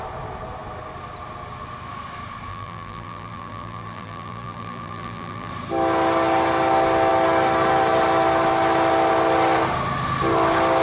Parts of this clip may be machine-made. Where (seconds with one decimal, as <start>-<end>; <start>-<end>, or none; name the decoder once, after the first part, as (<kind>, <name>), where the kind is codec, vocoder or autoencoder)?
2.5-5.5 (vocoder, BigVGAN v2)